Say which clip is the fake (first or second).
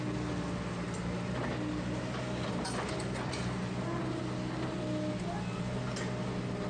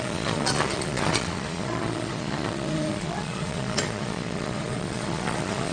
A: second